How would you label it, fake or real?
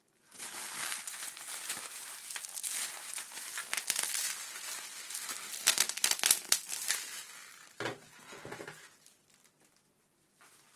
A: real